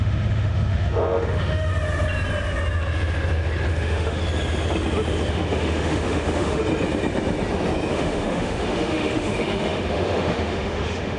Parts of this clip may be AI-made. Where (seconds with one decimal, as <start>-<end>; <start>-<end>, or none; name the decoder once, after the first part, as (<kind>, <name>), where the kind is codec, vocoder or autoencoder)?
0.0-1.7 (autoencoder, DAC-VAE); 3.7-4.2; 5.3-6.6; 7.9-11.2